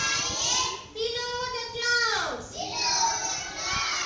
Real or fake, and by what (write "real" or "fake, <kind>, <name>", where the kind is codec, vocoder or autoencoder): real